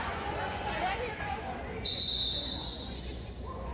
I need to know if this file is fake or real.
fake